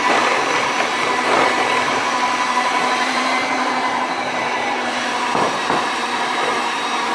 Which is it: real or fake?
fake